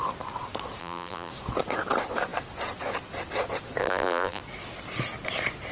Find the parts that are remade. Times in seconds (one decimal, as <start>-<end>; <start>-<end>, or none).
0.8-1.3; 3.8-4.4